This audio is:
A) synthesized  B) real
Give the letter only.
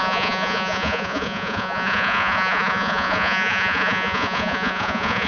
A